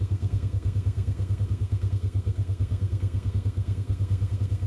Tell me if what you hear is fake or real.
fake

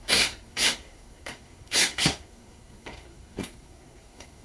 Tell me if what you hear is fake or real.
fake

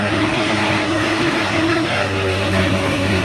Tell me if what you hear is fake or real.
fake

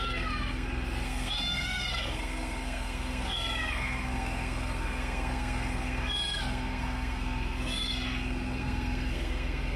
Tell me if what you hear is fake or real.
fake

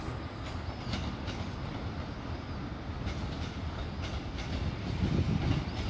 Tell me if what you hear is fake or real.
real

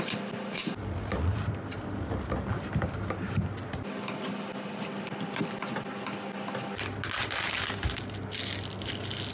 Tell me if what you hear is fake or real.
real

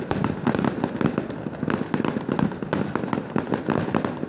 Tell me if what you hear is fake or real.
real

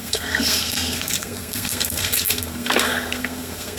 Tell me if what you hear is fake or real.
fake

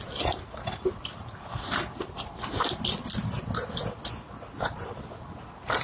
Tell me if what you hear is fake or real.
real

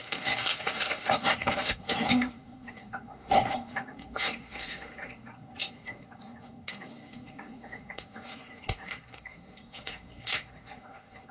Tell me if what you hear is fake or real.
fake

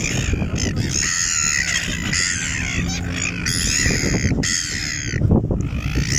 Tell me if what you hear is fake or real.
real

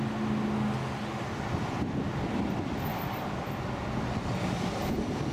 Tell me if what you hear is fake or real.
real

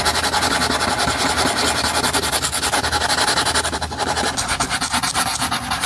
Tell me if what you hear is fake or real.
real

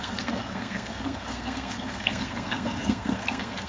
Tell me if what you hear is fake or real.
fake